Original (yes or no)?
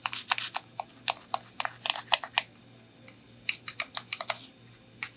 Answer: yes